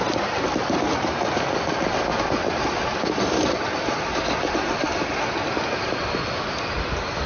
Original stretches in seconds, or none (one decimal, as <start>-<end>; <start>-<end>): 0.0-7.3